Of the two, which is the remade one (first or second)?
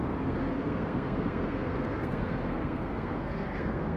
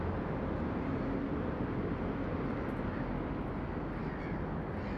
first